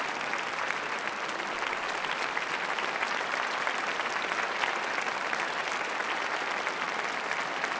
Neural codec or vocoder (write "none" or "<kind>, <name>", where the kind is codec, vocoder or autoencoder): none